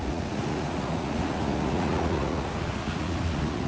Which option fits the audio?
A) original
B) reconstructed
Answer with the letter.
B